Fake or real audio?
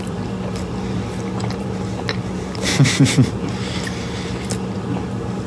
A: real